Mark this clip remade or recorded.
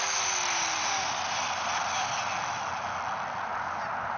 recorded